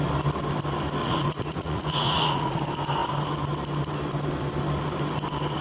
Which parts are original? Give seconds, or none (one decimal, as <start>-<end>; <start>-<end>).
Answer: 0.0-1.0; 2.6-5.6